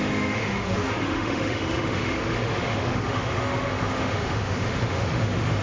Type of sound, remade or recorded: remade